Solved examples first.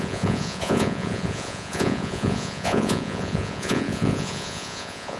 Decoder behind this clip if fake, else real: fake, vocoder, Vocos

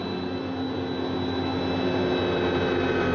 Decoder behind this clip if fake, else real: real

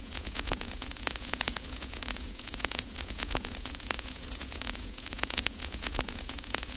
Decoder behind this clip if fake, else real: fake, vocoder, Vocos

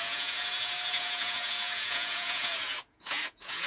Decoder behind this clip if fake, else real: fake, vocoder, Vocos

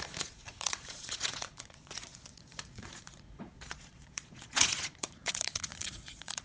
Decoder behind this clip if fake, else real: fake, vocoder, Vocos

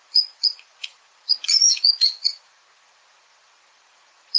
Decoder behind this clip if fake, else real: fake, vocoder, Vocos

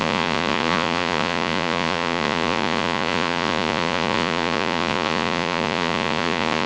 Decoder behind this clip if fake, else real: fake, vocoder, Vocos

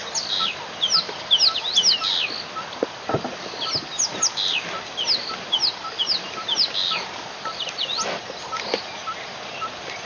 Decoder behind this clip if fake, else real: real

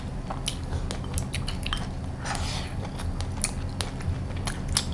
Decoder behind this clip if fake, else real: real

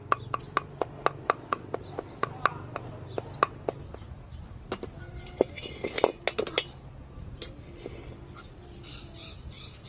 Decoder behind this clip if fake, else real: real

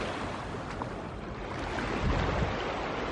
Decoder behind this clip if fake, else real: real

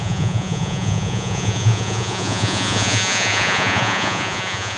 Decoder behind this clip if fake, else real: fake, vocoder, Vocos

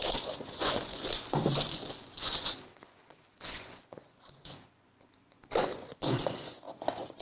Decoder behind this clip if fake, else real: fake, vocoder, Vocos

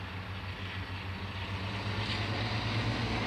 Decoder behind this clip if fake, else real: real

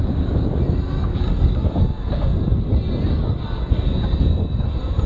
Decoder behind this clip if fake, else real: real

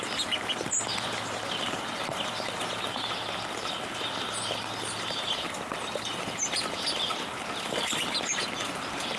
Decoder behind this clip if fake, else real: real